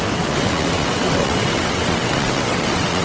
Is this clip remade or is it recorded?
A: remade